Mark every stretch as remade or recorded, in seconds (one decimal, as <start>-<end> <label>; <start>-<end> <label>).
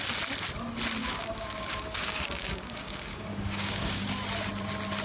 0.0-1.0 recorded; 1.0-4.0 remade; 4.0-5.0 recorded